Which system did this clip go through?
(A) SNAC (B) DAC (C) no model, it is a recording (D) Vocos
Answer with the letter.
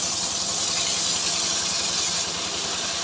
C